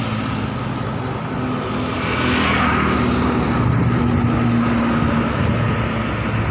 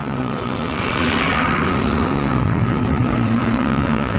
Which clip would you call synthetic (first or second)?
second